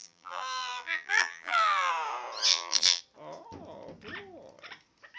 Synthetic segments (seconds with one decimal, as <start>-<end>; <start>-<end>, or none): 0.0-1.9; 2.5-3.0